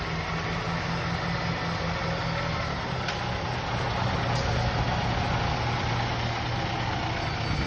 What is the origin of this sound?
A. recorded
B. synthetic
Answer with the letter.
A